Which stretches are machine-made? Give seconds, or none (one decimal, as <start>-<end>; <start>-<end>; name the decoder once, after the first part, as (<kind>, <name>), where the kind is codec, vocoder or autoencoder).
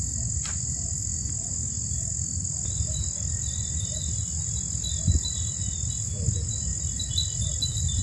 none